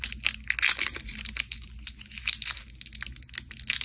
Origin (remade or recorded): recorded